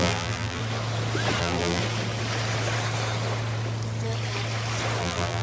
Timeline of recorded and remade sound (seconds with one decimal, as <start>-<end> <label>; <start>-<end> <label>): 0.0-0.6 remade; 0.6-1.4 recorded; 1.4-1.8 remade; 1.8-5.0 recorded; 5.0-5.4 remade

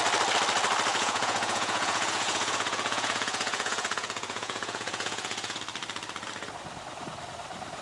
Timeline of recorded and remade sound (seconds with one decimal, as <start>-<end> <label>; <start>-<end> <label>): 0.0-0.9 recorded; 0.9-5.6 remade; 5.6-7.8 recorded

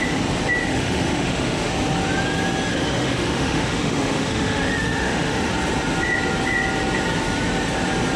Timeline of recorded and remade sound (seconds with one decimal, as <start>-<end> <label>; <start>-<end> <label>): 0.0-0.6 recorded; 0.6-1.7 remade; 1.7-2.7 recorded; 2.7-5.5 remade; 5.5-8.2 recorded

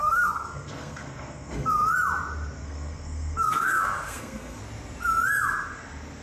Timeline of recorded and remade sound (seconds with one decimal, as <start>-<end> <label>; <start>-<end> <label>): 0.0-1.9 remade; 1.9-2.6 recorded; 2.6-4.6 remade; 4.6-6.2 recorded